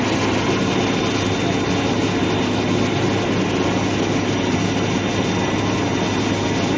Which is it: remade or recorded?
recorded